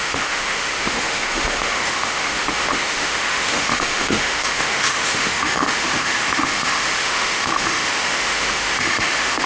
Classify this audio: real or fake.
fake